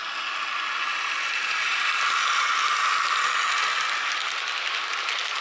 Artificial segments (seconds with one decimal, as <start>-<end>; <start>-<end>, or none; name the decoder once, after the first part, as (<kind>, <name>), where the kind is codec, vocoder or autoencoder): none